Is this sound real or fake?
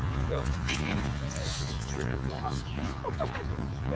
fake